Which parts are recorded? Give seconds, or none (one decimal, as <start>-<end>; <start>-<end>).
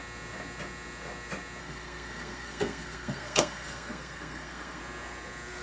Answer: 0.0-1.6; 4.8-5.6